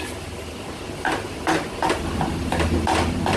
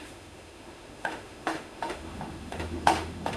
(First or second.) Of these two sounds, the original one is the first